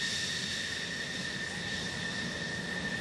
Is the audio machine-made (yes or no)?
no